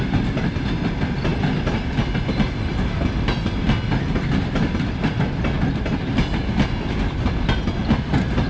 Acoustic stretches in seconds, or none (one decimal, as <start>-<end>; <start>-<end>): 0.0-8.5